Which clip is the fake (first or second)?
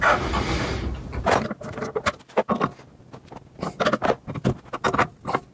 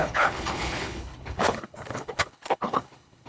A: second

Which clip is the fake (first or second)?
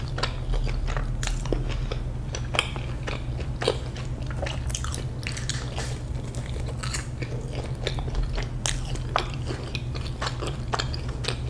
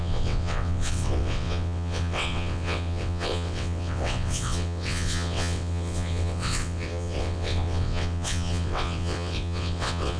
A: second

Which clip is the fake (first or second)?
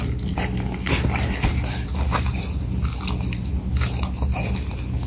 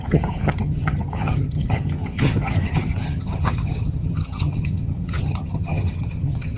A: second